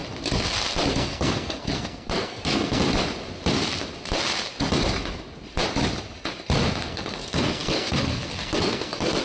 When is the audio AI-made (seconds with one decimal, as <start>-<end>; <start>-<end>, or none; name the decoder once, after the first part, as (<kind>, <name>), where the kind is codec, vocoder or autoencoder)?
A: 0.9-2.8 (codec, SNAC); 6.8-9.2

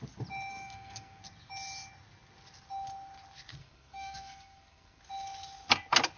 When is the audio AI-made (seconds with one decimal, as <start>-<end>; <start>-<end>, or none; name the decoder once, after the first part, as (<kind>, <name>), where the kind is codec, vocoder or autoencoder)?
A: 0.5-1.2 (codec, SNAC); 3.6-5.0

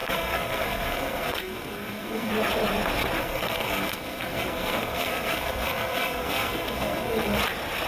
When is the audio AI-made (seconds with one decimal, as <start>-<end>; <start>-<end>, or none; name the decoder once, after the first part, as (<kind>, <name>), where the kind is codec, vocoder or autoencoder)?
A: 0.0-2.3 (codec, SNAC); 3.2-7.4

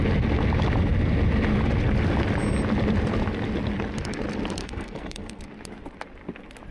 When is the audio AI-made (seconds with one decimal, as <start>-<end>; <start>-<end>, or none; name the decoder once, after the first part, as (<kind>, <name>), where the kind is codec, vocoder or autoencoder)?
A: 4.6-5.4 (codec, SNAC)

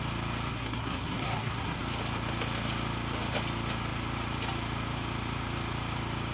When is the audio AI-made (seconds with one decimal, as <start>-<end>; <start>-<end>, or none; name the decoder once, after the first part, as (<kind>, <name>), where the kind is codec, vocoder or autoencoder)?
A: 0.5-1.8 (codec, SNAC)

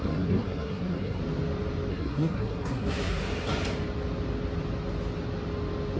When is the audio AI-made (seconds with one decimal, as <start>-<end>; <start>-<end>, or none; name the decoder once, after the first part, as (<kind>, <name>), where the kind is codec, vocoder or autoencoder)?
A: 0.0-1.2 (codec, SNAC); 1.9-3.2

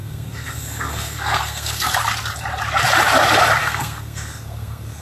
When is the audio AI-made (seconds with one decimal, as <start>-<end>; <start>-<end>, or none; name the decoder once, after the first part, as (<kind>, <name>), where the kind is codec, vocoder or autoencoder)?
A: 0.0-1.9 (codec, SNAC); 3.6-5.0

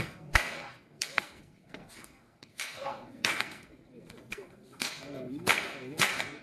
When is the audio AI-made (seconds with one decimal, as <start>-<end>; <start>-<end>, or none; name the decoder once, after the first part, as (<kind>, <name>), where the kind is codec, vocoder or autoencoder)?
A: 0.0-6.4 (codec, SNAC)